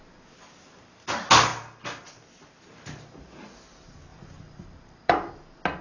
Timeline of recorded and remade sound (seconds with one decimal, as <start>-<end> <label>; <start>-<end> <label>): 0.0-4.1 recorded; 4.1-5.3 remade; 5.3-5.8 recorded